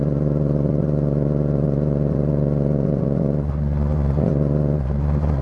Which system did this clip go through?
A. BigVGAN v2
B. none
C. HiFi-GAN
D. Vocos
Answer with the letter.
D